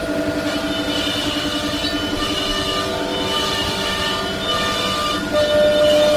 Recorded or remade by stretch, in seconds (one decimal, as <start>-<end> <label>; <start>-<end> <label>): 0.0-1.8 recorded; 1.8-2.4 remade; 2.4-2.9 recorded; 2.9-4.0 remade; 4.0-6.2 recorded